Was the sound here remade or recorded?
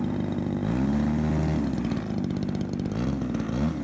recorded